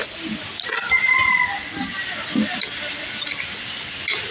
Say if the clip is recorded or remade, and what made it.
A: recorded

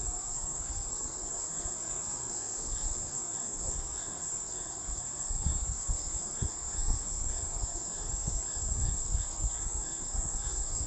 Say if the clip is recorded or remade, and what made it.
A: remade, codec, SNAC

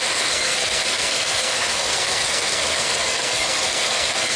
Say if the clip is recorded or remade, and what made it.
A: remade, codec, SNAC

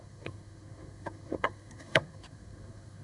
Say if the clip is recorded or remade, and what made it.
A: remade, codec, SNAC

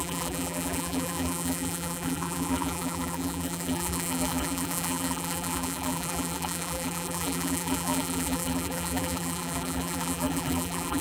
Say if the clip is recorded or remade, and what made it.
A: remade, vocoder, BigVGAN v2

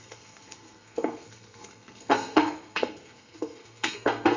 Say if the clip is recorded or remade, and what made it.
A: remade, codec, SNAC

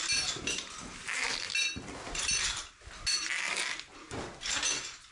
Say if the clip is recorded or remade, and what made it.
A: recorded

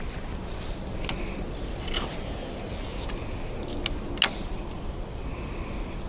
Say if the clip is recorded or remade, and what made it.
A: recorded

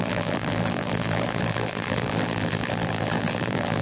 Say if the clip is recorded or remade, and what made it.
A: remade, vocoder, BigVGAN v2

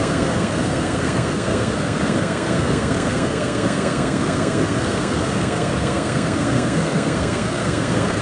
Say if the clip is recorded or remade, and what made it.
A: remade, codec, SNAC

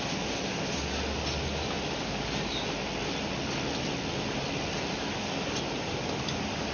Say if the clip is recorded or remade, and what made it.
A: recorded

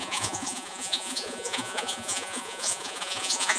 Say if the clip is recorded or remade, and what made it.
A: remade, vocoder, Vocos